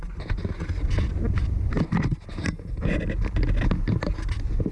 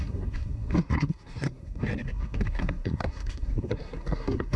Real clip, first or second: first